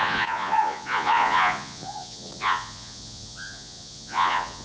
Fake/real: fake